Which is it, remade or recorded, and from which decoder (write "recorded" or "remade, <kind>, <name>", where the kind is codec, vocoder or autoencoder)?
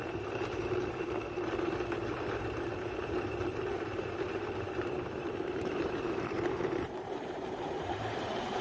remade, vocoder, BigVGAN v2